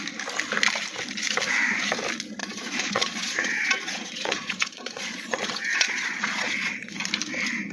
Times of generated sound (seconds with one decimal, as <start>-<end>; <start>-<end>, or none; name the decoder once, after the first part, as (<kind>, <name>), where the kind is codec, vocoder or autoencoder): 2.4-6.9 (vocoder, Vocos)